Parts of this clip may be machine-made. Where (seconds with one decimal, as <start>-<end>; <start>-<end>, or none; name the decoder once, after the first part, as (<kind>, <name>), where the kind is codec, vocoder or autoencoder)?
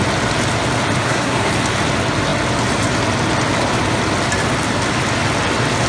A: 1.0-1.5 (codec, SNAC)